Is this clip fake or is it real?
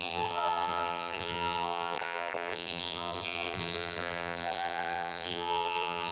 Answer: fake